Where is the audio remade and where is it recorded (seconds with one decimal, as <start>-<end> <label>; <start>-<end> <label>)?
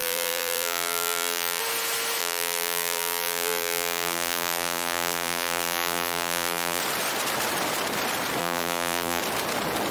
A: 0.0-1.6 remade; 1.6-2.2 recorded; 2.2-6.8 remade; 6.8-8.4 recorded; 8.4-9.2 remade; 9.2-9.9 recorded